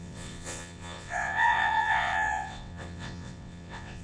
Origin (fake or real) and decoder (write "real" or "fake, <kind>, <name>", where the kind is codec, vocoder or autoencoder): fake, vocoder, WaveNeXt